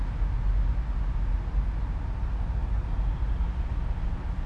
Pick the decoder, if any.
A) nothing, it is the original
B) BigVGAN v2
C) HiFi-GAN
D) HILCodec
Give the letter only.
A